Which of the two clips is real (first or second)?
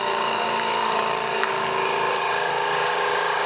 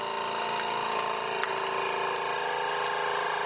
second